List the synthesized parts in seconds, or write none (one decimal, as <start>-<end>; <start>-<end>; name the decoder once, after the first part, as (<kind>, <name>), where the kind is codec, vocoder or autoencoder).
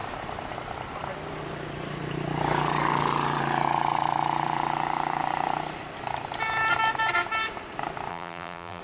8.1-8.8 (vocoder, BigVGAN v2)